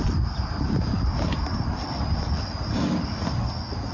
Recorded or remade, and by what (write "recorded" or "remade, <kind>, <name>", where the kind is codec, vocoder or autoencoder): remade, vocoder, BigVGAN v2